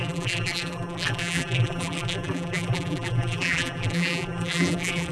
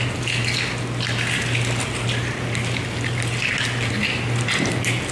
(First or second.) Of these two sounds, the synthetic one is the first